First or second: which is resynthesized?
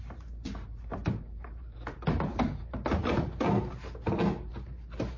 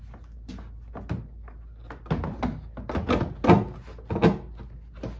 first